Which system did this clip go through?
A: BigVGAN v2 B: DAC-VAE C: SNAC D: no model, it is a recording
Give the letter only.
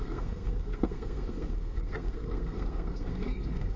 C